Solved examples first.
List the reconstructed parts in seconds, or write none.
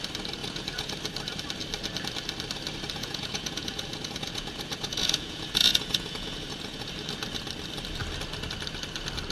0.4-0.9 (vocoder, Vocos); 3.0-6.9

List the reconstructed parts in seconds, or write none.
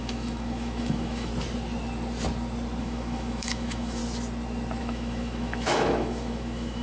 0.0-1.3 (autoencoder, DAC-VAE); 2.8-4.0; 4.8-6.8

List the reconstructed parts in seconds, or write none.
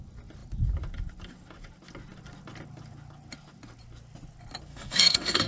4.7-5.5 (autoencoder, DAC-VAE)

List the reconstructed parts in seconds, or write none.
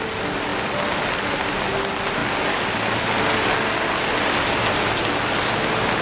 none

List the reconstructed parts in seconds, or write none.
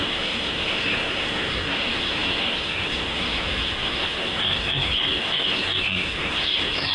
0.0-6.9 (codec, SNAC)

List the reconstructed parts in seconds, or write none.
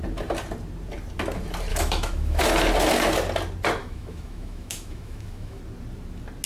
1.7-2.4 (autoencoder, DAC-VAE); 3.8-5.6